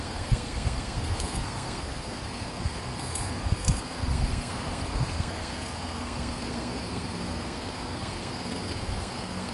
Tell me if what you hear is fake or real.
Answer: fake